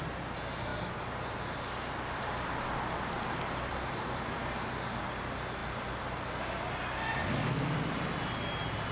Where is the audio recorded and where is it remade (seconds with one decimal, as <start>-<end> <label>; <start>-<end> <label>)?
0.0-3.7 recorded; 3.7-5.0 remade; 5.0-8.9 recorded